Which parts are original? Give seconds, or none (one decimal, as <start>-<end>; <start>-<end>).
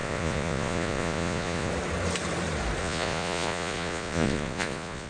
1.7-2.8